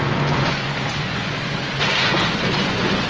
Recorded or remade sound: remade